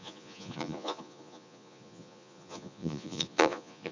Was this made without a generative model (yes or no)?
no